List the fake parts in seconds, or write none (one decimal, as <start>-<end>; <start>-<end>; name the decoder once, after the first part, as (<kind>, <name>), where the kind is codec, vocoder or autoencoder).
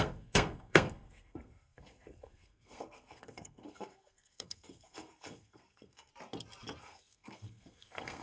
0.0-6.1 (codec, SNAC); 6.8-8.2